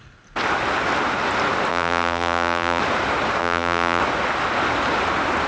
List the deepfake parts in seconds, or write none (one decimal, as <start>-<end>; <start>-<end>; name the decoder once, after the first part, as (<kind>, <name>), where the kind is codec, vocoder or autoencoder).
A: 1.7-2.8 (vocoder, BigVGAN v2); 3.4-4.0